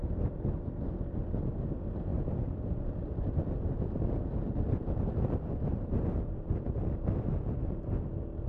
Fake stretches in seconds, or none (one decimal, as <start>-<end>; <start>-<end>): none